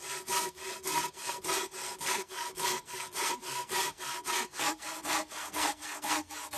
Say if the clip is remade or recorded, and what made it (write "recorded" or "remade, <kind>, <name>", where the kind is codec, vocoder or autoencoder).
remade, codec, SNAC